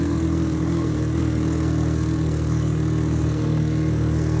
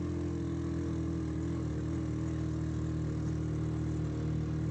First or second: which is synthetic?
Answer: first